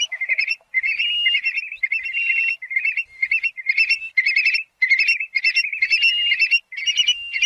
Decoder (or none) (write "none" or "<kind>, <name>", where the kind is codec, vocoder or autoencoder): none